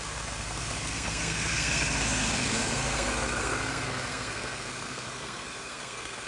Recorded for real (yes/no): no